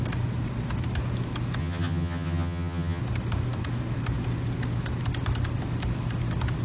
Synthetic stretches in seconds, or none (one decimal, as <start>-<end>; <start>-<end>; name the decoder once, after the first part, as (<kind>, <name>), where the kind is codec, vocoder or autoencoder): 1.6-3.0 (vocoder, HiFi-GAN)